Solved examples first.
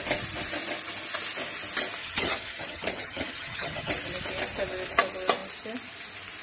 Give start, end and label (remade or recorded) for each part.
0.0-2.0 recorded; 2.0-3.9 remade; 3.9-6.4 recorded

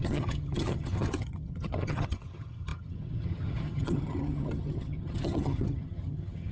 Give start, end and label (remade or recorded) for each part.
0.0-6.5 remade

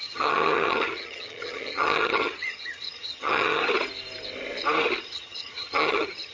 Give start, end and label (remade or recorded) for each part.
0.0-3.6 remade; 3.6-5.0 recorded; 5.0-6.3 remade

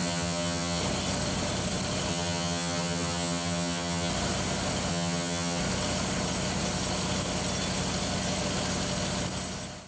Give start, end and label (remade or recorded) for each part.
0.0-0.8 remade; 0.8-2.1 recorded; 2.1-4.1 remade; 4.1-4.9 recorded; 4.9-5.6 remade; 5.6-9.9 recorded

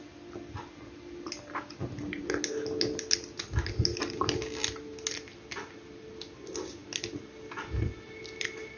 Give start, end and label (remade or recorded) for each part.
0.0-8.8 recorded